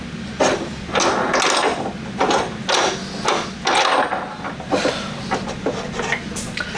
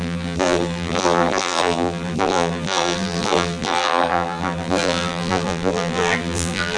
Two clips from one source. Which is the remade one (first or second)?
second